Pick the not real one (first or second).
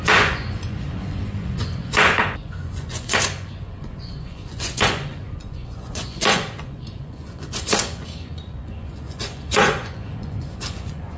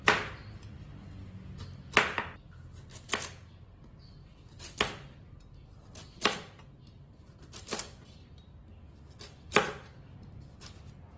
first